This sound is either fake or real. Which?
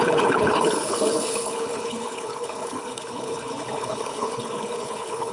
fake